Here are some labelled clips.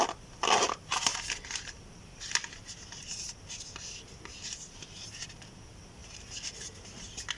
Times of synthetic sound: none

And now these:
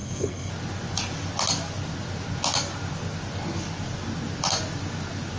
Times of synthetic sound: 0.0-0.5

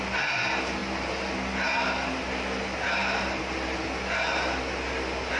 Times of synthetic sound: none

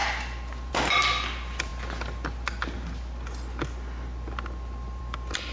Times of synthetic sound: none

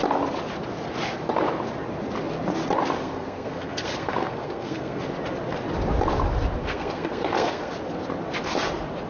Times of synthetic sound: 3.0-5.0; 6.6-7.7

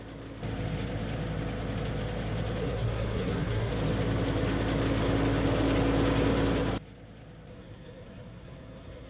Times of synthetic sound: 2.6-3.7; 7.5-9.1

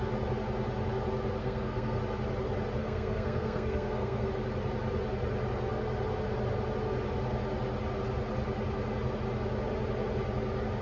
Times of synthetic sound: 1.4-2.0; 2.8-4.3

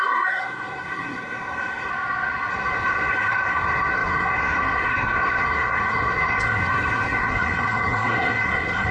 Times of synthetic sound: 0.0-1.9; 2.5-8.9